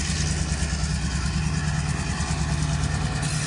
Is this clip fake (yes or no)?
no